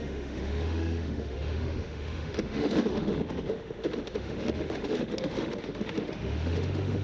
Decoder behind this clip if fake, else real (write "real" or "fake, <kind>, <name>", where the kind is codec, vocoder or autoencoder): fake, autoencoder, DAC-VAE